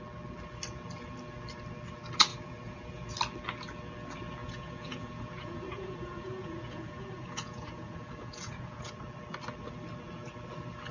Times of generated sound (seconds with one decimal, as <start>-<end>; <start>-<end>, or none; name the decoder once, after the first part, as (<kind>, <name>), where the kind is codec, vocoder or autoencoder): 2.3-3.1 (vocoder, Vocos); 4.4-8.9